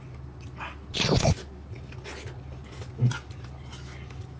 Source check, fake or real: real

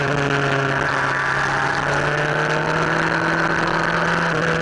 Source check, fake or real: real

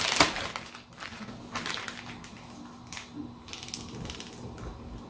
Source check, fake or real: real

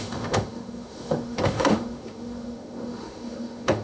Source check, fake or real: fake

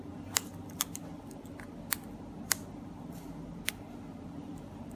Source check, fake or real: real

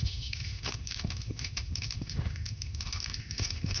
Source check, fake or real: fake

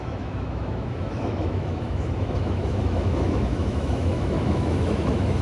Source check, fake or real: fake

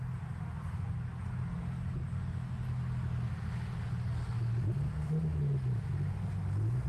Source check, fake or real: real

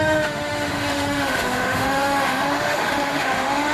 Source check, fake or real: fake